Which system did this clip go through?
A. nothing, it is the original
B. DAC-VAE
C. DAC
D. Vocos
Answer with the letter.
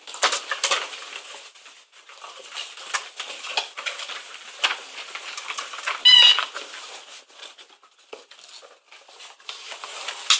A